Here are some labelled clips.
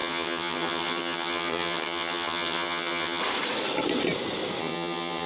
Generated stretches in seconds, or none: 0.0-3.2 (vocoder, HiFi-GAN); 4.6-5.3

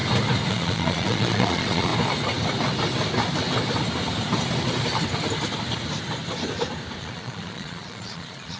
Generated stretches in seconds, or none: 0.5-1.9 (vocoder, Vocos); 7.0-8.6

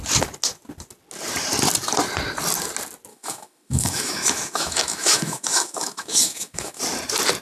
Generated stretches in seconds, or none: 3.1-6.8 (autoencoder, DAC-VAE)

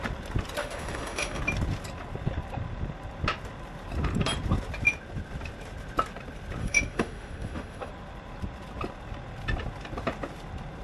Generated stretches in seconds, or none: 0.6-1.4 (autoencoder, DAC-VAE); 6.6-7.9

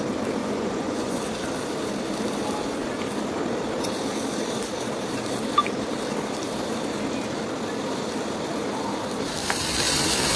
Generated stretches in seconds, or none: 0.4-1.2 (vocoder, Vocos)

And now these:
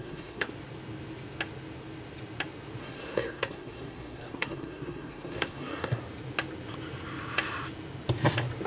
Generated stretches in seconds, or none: 0.0-0.5 (codec, SNAC); 2.8-6.0